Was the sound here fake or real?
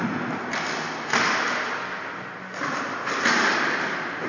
real